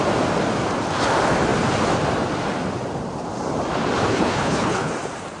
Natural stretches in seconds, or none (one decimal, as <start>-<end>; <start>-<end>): 0.0-4.1; 4.9-5.4